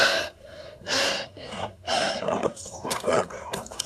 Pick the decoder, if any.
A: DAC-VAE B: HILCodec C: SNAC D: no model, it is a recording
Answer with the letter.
C